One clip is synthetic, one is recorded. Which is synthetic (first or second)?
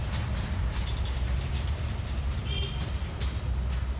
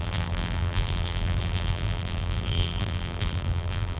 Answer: second